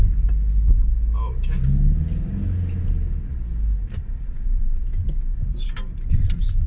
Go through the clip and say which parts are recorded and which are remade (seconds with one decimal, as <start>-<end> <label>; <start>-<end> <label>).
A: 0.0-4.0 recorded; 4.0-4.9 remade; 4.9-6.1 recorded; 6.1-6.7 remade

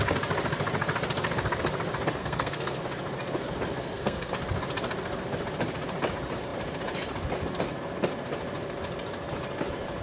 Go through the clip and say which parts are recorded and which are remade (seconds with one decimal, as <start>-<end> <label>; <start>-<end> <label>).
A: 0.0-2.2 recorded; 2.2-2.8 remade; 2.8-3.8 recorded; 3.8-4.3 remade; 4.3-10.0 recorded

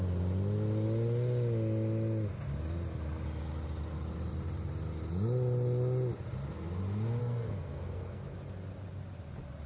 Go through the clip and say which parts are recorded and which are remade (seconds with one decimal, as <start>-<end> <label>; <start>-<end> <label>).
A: 0.0-7.2 recorded; 7.2-8.3 remade; 8.3-9.7 recorded